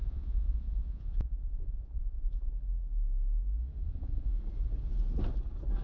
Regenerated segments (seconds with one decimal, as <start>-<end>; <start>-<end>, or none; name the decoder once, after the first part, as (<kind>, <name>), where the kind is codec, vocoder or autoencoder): 0.0-2.5 (vocoder, Vocos); 3.8-4.3

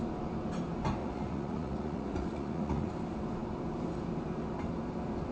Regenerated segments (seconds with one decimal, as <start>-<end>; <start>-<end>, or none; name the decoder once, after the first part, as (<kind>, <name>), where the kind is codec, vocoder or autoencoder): 1.0-2.9 (vocoder, Vocos)